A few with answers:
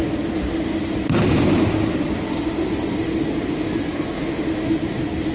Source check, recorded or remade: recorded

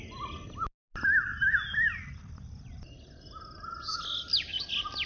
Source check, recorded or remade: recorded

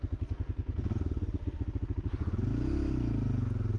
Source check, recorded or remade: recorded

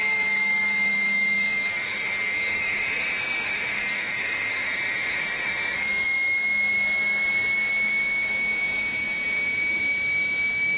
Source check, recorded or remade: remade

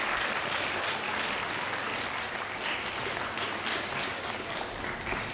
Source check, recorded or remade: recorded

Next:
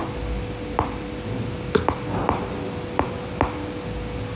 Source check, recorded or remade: recorded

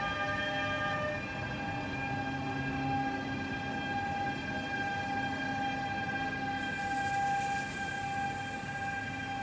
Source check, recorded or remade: recorded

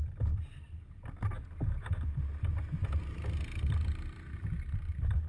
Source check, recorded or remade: recorded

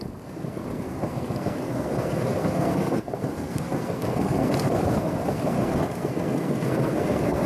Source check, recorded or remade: remade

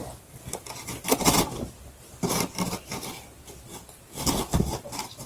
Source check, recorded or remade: recorded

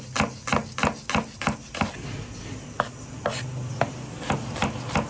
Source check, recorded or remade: recorded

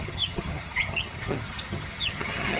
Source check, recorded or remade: remade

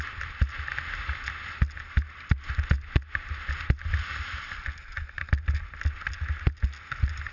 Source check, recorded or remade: recorded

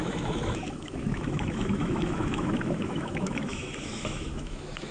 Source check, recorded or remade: remade